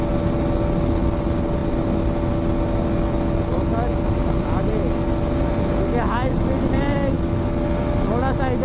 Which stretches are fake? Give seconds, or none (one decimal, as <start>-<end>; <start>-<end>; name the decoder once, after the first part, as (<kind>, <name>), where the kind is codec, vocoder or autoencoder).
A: 3.9-4.7 (vocoder, BigVGAN v2)